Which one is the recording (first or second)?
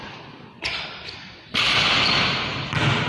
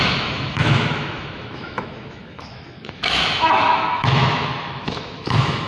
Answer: first